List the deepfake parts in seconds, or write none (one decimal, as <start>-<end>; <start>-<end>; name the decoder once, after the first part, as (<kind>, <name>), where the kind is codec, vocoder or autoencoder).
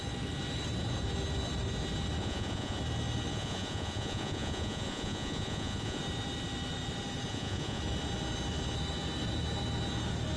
2.2-2.8 (vocoder, Vocos); 3.3-6.0; 7.3-7.8